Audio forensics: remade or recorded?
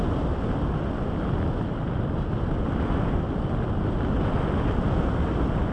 recorded